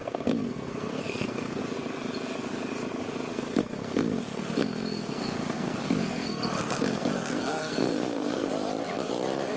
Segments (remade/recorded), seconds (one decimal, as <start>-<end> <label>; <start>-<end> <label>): 0.0-1.6 remade; 1.6-3.3 recorded; 3.3-8.5 remade; 8.5-9.6 recorded